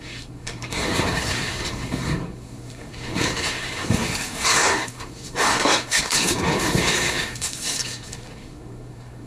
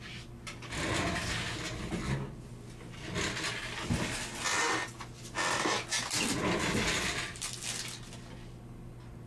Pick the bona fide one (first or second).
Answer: second